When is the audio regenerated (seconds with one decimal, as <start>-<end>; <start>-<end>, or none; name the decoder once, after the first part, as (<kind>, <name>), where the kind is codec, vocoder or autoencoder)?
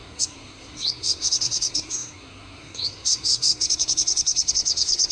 0.0-5.1 (codec, SNAC)